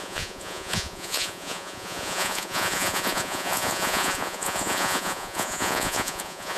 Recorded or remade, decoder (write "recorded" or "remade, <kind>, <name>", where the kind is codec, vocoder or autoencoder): remade, vocoder, Vocos